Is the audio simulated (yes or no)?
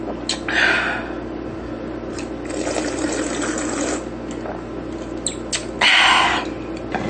no